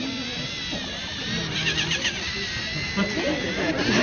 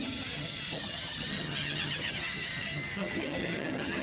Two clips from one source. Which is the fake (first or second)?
second